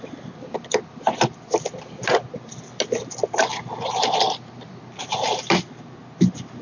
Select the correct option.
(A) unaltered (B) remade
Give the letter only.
A